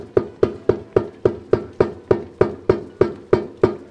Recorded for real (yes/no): yes